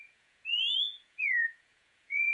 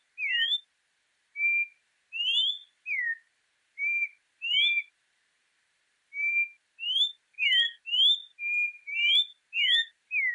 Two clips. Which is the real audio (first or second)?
second